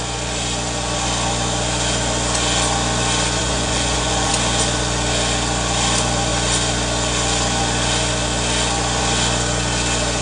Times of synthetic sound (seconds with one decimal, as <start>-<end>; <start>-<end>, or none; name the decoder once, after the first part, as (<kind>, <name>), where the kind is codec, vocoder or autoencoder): 3.4-4.3 (vocoder, Vocos)